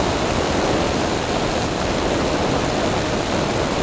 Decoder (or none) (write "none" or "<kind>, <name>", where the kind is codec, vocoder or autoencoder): none